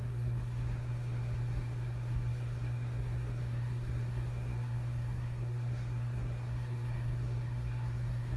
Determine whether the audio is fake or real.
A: fake